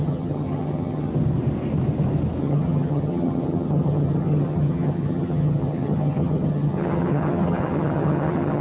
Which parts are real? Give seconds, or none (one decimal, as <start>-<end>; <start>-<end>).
1.1-2.4